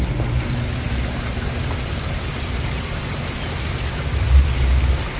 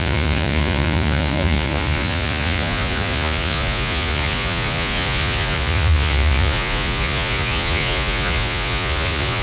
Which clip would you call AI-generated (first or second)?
second